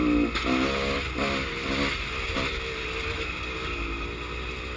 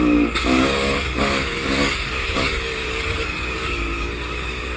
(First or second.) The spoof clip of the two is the second